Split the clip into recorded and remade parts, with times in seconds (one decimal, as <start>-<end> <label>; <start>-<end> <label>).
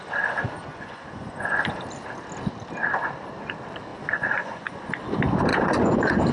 0.0-0.7 recorded; 0.7-1.7 remade; 1.7-3.9 recorded; 3.9-4.9 remade; 4.9-5.5 recorded; 5.5-6.3 remade